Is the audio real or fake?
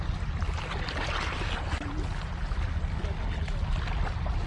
real